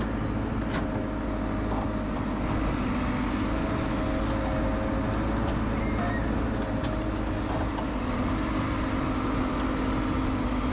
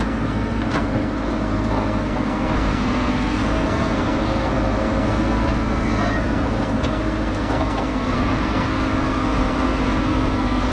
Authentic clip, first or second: first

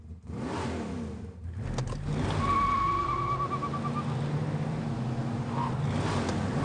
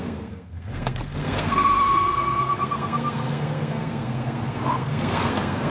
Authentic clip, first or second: first